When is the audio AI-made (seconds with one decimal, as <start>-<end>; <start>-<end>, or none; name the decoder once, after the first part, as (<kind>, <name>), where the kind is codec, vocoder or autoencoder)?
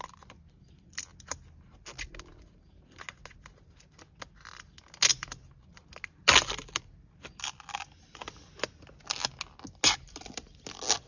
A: none